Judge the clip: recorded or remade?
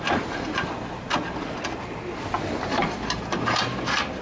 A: recorded